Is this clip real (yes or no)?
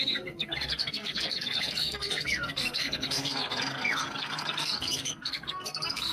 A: no